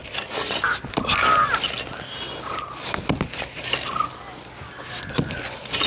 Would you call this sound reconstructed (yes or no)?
no